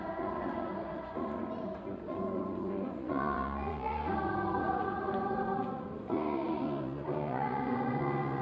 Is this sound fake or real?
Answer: fake